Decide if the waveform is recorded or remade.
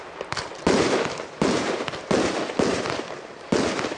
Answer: recorded